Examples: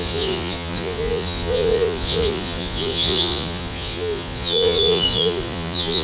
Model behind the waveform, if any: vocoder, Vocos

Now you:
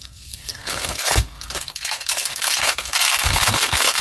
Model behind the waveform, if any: codec, SNAC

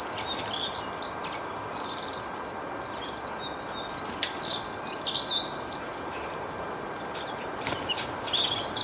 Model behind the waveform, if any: none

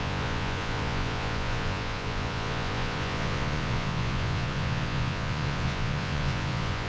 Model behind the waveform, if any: vocoder, Vocos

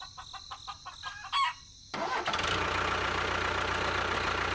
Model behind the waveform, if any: none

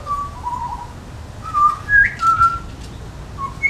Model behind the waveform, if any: none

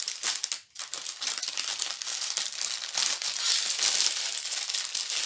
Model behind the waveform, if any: none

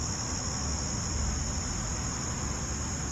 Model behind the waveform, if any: none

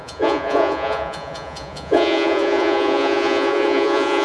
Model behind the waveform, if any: vocoder, Vocos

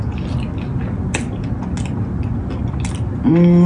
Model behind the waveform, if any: none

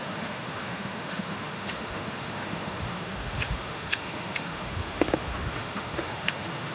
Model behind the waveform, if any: autoencoder, DAC-VAE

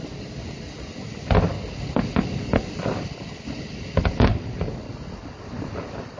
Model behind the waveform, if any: none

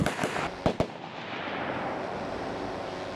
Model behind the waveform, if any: none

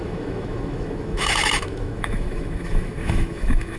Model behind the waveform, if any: autoencoder, DAC-VAE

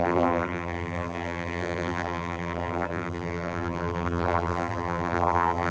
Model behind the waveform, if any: vocoder, BigVGAN v2